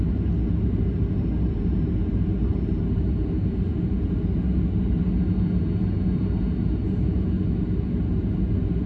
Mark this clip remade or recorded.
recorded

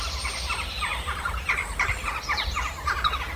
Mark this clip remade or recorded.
recorded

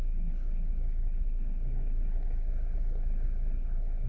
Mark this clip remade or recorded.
remade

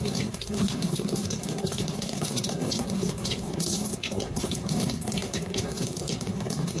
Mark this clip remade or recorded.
remade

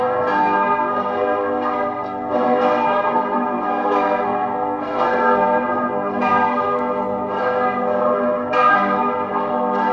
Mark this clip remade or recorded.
remade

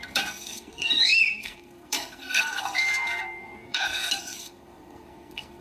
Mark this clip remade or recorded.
remade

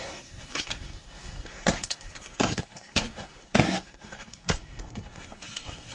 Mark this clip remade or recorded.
remade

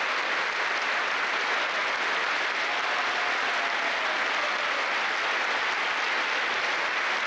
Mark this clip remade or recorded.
recorded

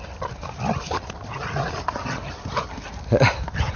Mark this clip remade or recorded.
recorded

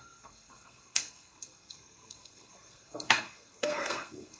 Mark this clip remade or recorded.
remade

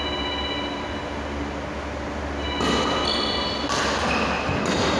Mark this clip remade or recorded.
recorded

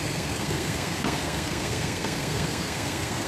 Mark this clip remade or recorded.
remade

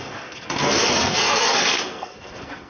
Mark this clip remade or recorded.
remade